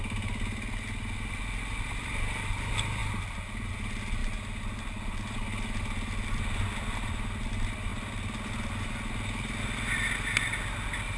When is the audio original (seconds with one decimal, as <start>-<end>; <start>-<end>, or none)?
0.0-11.2